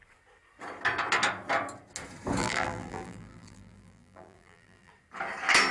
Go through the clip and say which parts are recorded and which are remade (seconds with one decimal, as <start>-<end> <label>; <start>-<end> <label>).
0.0-2.4 recorded; 2.4-4.9 remade; 4.9-5.7 recorded